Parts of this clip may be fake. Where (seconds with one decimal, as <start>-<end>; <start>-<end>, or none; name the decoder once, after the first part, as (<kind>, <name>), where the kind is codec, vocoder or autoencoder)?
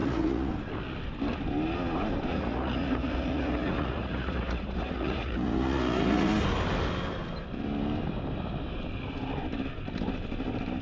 0.0-0.5 (vocoder, Vocos); 2.3-6.3